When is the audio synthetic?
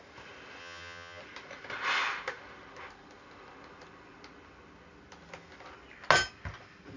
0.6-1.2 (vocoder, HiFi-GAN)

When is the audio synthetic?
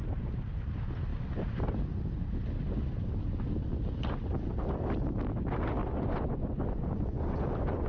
5.8-7.9 (vocoder, Vocos)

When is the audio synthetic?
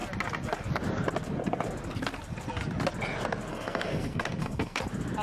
3.5-4.8 (codec, SNAC)